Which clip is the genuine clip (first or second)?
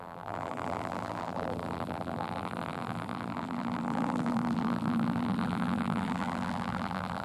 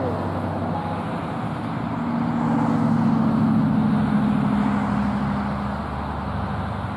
second